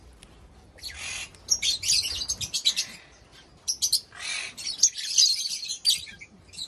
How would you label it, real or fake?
real